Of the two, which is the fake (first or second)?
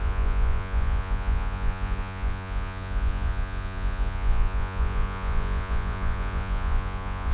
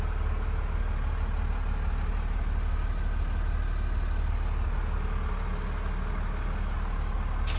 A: first